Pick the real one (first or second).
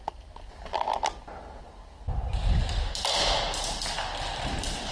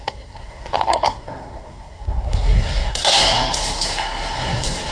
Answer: first